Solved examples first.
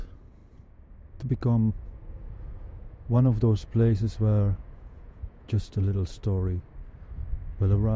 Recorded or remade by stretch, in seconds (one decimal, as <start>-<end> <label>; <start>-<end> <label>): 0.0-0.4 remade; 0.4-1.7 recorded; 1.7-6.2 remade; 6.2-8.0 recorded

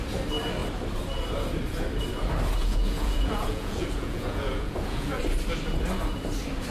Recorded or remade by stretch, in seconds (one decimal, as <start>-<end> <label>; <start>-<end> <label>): 0.0-2.6 recorded; 2.6-5.2 remade; 5.2-6.7 recorded

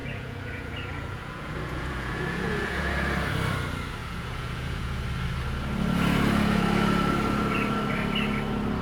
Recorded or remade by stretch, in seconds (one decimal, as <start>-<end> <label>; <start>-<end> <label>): 0.0-2.9 remade; 2.9-4.0 recorded; 4.0-4.9 remade; 4.9-8.8 recorded

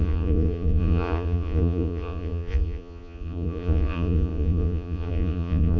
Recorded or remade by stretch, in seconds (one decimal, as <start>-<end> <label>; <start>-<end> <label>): 0.0-5.8 remade